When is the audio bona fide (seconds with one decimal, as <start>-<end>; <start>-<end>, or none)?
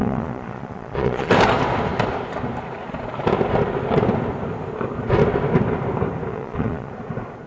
1.3-6.3; 6.9-7.5